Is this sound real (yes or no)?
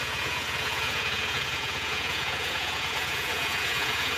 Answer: no